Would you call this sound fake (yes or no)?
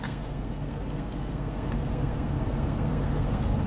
yes